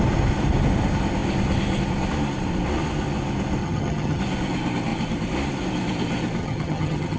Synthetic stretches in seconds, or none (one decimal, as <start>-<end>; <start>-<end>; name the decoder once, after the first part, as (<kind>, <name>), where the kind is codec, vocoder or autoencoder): 3.6-4.2 (vocoder, HiFi-GAN); 6.4-7.2